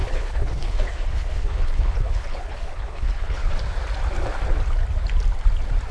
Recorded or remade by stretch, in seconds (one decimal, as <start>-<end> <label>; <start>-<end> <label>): 0.0-3.5 remade; 3.5-5.9 recorded